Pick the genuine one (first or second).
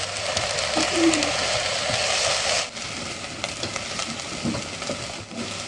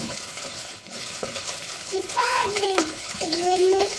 first